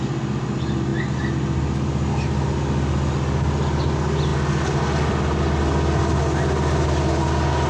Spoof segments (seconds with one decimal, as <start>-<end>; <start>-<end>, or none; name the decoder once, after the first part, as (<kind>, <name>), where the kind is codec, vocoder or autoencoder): none